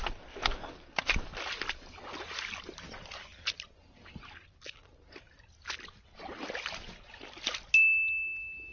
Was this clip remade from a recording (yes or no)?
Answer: no